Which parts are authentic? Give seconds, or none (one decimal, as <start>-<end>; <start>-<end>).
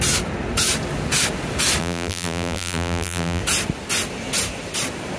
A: 0.0-1.8; 3.4-5.2